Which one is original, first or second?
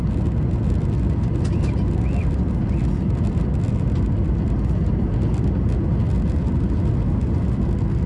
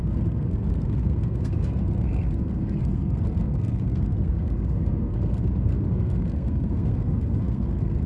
first